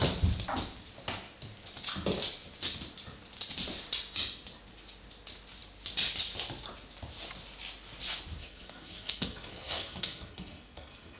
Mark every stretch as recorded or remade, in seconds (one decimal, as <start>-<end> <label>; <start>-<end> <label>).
0.0-8.4 recorded; 8.4-11.2 remade